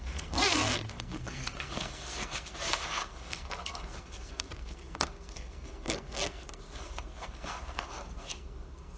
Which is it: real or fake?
fake